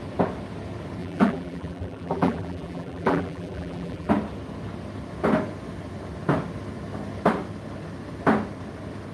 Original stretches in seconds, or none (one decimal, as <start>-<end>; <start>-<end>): 0.0-1.0; 4.1-9.1